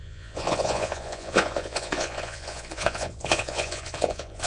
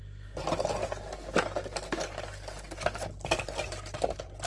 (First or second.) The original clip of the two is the second